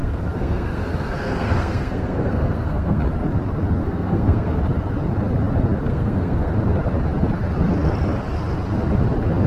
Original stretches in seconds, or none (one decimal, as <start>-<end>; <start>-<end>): 3.0-3.8; 4.6-5.9; 6.5-9.5

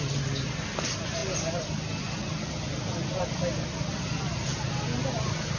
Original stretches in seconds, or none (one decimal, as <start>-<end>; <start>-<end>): 0.0-5.6

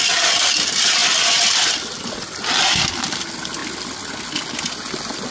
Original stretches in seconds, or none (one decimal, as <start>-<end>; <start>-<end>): 0.0-5.3

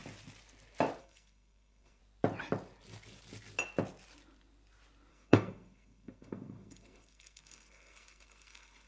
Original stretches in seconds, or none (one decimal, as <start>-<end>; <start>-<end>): 0.0-1.0; 2.0-5.1

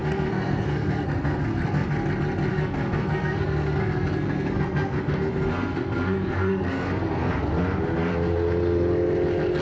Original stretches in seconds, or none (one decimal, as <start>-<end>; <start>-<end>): 1.9-2.5; 7.3-9.6